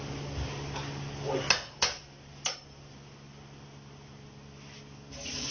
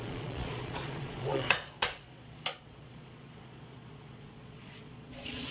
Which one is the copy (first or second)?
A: second